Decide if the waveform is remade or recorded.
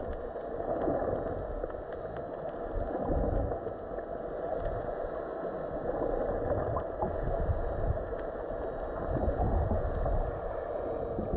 recorded